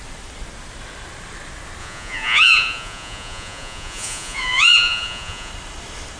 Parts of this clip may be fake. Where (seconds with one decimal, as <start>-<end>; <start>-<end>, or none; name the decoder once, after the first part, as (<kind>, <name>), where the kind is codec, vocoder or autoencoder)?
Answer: 1.8-5.5 (vocoder, Vocos)